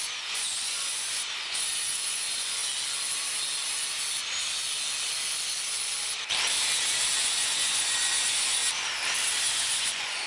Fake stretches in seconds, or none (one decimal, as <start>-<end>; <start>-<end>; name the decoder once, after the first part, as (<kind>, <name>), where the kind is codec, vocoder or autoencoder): 0.0-2.6 (vocoder, Vocos); 7.2-8.6; 9.6-10.3